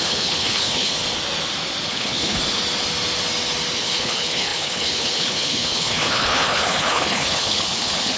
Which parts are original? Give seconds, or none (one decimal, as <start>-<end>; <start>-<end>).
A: 1.0-1.9; 2.4-3.8